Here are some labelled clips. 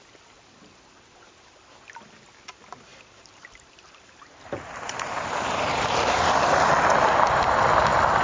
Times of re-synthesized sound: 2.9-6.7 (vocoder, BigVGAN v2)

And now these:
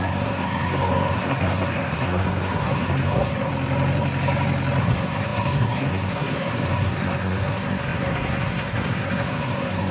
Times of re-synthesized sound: 0.0-3.5 (codec, SNAC); 4.8-9.9

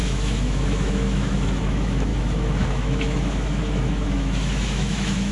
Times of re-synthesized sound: 0.0-5.3 (autoencoder, DAC-VAE)

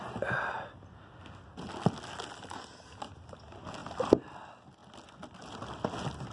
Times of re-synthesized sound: none

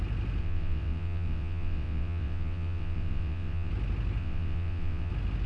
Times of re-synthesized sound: 0.4-3.7 (vocoder, WaveNeXt); 4.2-5.1

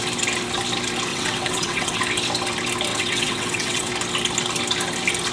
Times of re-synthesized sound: 1.1-2.0 (vocoder, WaveNeXt); 2.9-3.9